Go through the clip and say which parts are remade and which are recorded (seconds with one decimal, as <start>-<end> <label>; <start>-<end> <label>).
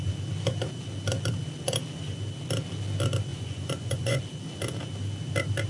0.0-3.3 recorded; 3.3-4.2 remade; 4.2-5.7 recorded